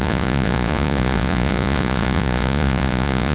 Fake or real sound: fake